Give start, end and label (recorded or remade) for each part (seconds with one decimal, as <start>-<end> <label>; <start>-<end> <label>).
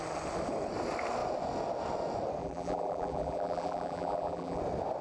0.0-2.4 recorded; 2.4-4.6 remade; 4.6-5.0 recorded